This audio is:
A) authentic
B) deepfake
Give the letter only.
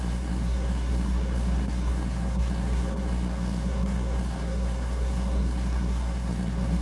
B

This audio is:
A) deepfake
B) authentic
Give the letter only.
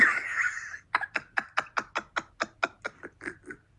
B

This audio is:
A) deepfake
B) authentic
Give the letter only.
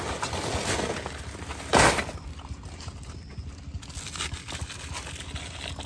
B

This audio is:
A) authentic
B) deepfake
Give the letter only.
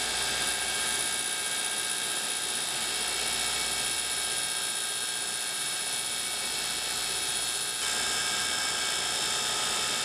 A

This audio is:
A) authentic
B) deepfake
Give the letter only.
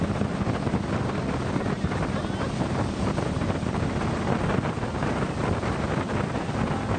A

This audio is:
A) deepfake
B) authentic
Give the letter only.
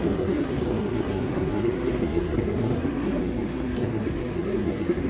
A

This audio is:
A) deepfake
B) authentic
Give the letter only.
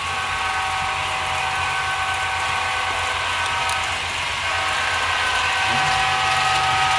B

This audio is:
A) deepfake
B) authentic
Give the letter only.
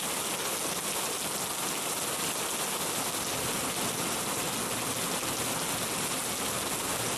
B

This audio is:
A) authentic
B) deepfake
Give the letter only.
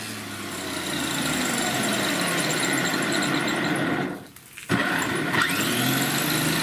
A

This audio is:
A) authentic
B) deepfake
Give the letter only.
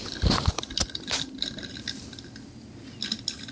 A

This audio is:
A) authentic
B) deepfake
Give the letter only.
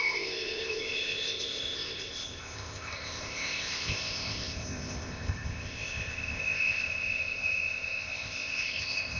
B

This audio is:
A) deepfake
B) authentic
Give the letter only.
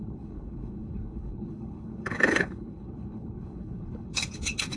A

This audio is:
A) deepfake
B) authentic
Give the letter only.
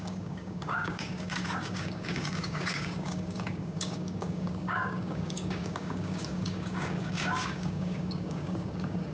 A